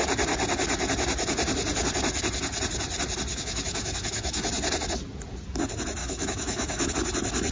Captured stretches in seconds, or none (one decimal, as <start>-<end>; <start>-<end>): 0.0-3.3; 4.5-6.0; 6.9-7.5